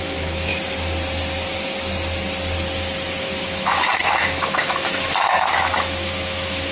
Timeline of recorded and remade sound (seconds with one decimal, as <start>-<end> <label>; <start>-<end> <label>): 0.0-0.5 remade; 0.5-3.2 recorded; 3.2-6.7 remade